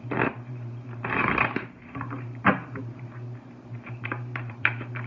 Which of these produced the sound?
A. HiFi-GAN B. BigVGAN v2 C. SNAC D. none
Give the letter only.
B